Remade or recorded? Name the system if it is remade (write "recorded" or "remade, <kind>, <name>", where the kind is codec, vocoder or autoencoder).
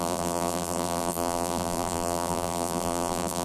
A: remade, vocoder, BigVGAN v2